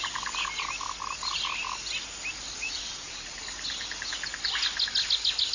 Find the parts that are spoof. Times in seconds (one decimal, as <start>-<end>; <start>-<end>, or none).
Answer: 2.6-3.4